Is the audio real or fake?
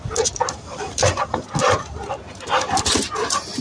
real